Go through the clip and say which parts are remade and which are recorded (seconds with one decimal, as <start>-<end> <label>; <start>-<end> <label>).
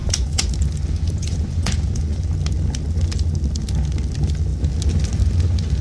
0.0-0.5 remade; 0.5-1.2 recorded; 1.2-2.2 remade; 2.2-5.8 recorded